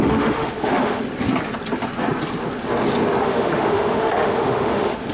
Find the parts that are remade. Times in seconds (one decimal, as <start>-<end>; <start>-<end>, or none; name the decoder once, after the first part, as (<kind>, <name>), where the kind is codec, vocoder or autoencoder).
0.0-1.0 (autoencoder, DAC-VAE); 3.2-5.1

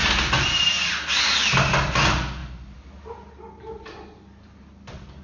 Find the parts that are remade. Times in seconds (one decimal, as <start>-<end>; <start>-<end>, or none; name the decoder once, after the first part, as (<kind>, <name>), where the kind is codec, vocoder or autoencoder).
none

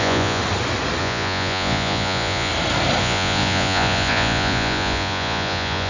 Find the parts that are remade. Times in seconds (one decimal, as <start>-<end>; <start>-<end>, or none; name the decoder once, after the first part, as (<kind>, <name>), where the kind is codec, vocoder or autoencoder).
0.0-0.4 (vocoder, Vocos); 1.0-2.5; 3.0-5.9

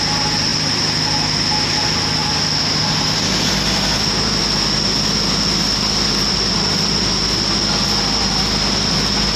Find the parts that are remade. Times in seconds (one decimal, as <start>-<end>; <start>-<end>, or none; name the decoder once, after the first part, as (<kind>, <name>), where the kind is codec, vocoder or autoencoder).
none

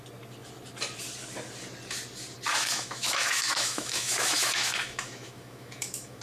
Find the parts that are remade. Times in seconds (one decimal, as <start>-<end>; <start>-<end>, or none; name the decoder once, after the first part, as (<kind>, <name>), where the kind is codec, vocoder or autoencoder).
2.5-6.2 (autoencoder, DAC-VAE)